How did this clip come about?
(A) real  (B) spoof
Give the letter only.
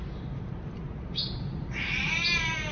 B